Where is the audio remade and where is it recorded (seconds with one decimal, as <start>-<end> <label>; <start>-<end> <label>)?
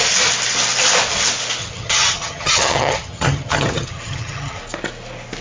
0.0-1.6 recorded; 1.6-4.6 remade; 4.6-5.4 recorded